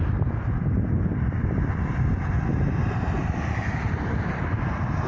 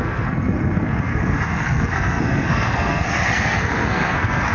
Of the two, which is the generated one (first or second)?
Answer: second